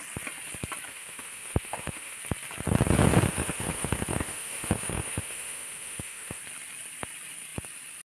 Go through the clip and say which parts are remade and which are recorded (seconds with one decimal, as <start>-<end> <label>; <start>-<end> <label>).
0.0-0.9 recorded; 0.9-2.2 remade; 2.2-3.3 recorded; 3.3-6.4 remade; 6.4-8.1 recorded